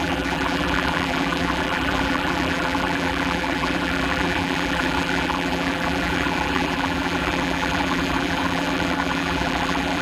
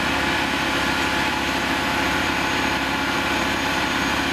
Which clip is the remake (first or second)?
first